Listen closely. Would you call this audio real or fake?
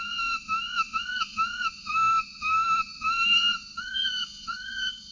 fake